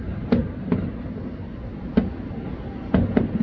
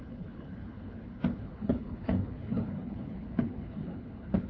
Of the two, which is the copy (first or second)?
second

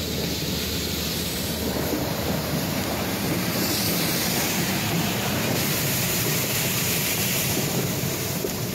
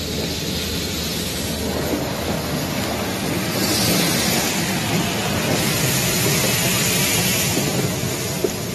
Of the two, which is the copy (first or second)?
first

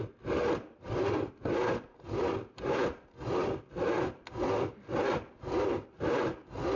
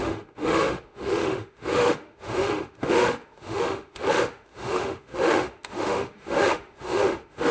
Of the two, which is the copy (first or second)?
second